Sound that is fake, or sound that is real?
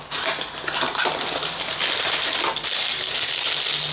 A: real